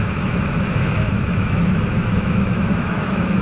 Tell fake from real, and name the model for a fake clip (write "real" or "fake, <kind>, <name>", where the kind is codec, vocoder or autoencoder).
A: fake, autoencoder, DAC-VAE